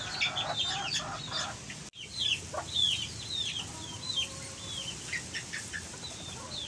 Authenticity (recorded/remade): recorded